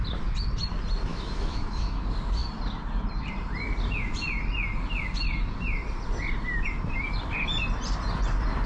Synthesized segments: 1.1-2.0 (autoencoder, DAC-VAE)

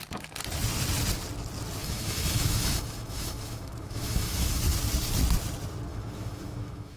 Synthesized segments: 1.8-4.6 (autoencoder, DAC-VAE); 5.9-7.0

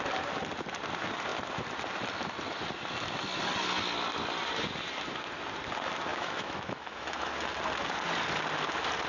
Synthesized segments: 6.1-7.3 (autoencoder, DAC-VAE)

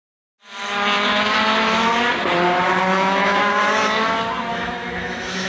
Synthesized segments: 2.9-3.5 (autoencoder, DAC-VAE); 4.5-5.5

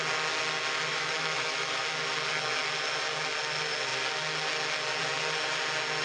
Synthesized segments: 0.9-1.8 (autoencoder, DAC-VAE)

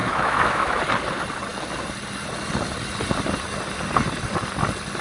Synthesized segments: 0.0-0.8 (autoencoder, DAC-VAE)

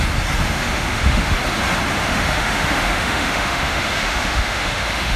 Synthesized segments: 0.4-1.3 (autoencoder, DAC-VAE); 2.0-5.2